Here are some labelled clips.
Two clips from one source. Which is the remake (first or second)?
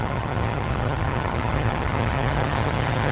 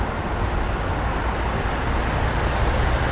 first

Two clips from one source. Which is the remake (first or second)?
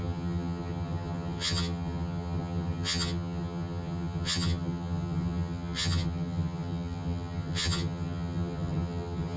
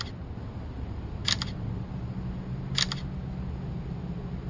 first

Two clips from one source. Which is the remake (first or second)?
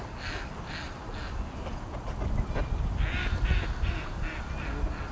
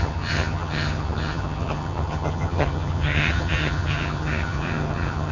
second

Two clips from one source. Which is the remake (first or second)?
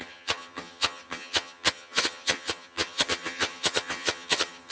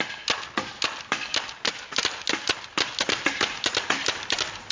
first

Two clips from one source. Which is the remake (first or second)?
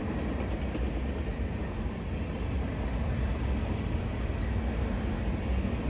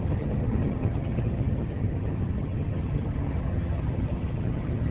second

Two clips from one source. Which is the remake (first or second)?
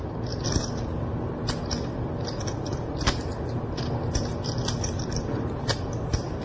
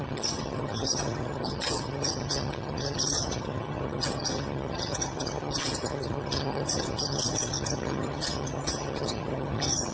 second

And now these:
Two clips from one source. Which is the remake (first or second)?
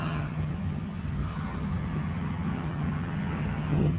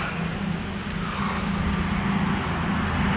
first